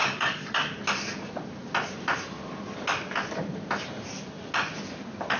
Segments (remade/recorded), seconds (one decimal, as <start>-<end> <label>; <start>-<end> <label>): 0.0-0.6 remade; 0.6-5.4 recorded